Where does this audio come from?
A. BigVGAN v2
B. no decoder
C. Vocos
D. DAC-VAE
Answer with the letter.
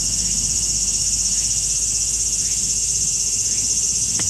D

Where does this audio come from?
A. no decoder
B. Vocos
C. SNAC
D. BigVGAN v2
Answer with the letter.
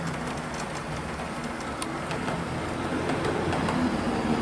A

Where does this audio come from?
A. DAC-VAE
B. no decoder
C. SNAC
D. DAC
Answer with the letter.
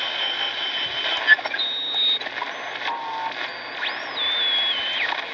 B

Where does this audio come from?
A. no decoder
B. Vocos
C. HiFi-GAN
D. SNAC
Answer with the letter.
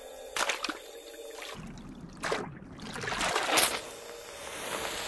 A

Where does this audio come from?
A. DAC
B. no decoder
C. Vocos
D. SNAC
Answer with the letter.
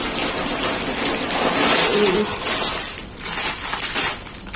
B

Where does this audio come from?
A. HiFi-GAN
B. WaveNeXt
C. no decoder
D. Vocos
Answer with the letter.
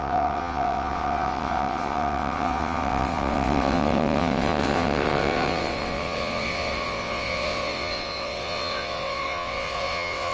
B